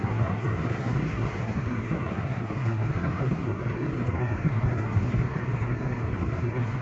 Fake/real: fake